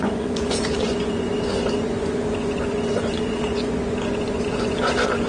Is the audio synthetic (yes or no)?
yes